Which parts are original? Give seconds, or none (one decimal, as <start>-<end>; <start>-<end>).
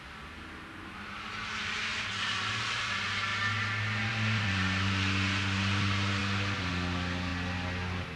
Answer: 0.0-1.9; 2.8-8.2